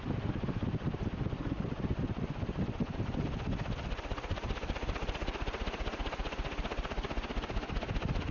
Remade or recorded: recorded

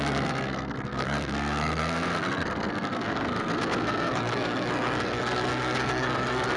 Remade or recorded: remade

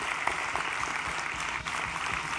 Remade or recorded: recorded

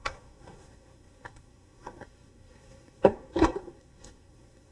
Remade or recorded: remade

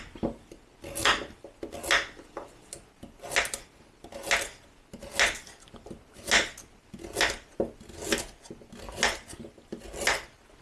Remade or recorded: recorded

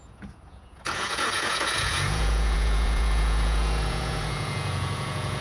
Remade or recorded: remade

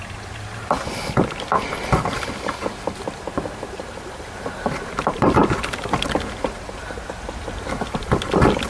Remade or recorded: recorded